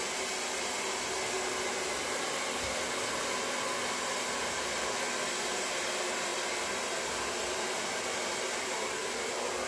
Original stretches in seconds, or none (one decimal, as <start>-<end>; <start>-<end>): 0.0-9.7